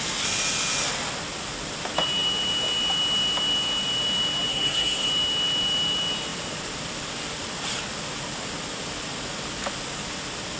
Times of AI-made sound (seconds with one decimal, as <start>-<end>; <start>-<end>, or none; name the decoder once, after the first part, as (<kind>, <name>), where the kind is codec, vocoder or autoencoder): 4.5-5.1 (codec, SNAC)